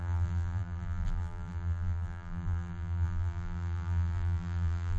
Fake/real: fake